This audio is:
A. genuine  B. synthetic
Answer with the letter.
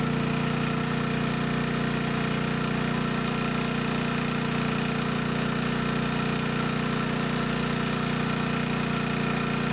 A